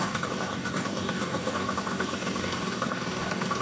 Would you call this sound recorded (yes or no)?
no